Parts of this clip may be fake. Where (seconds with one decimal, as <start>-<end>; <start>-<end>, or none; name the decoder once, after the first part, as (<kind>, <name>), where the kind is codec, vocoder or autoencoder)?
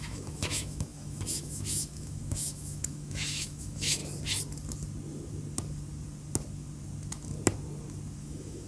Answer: 0.0-4.0 (autoencoder, DAC-VAE); 8.2-8.7